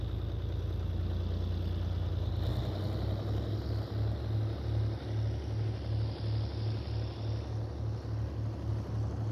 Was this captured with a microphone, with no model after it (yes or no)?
yes